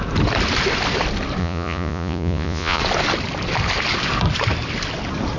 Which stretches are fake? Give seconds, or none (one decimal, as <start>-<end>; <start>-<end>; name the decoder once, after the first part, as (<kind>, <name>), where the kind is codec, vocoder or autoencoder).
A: 1.4-2.8 (vocoder, Vocos)